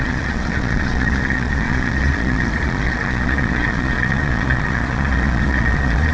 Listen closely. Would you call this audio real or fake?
fake